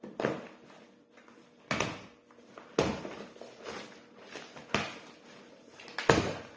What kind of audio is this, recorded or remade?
recorded